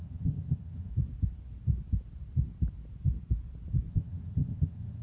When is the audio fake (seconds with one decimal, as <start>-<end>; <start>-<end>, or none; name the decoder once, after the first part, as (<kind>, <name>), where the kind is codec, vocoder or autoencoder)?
0.0-0.9 (vocoder, HiFi-GAN); 3.9-5.0